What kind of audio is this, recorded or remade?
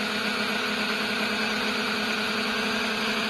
recorded